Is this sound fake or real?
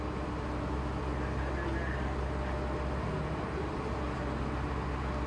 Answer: real